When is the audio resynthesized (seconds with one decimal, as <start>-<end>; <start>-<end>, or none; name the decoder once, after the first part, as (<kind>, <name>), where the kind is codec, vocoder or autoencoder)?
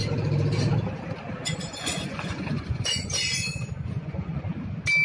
1.4-4.4 (vocoder, Vocos)